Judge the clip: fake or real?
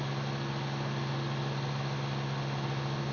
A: real